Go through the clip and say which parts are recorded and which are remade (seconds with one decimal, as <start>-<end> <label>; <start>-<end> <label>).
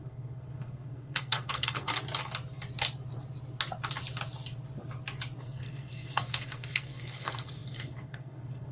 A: 0.0-1.9 remade; 1.9-5.4 recorded; 5.4-8.7 remade